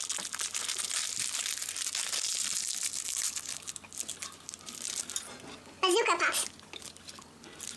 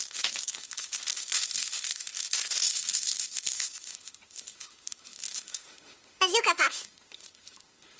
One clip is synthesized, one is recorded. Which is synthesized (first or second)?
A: second